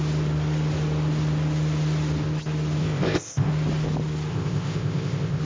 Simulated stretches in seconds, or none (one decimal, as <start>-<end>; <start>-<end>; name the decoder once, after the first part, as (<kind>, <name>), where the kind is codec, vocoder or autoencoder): 2.8-3.5 (codec, ZipCodec); 4.3-5.4